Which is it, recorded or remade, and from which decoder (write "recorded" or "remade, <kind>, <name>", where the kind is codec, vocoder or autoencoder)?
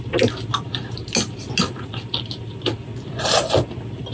recorded